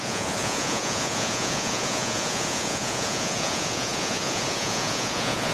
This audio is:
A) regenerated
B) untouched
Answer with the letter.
A